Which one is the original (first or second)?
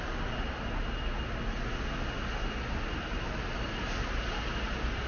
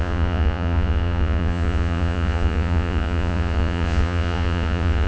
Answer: first